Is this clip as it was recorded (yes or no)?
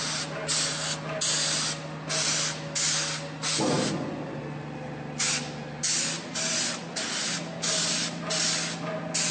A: yes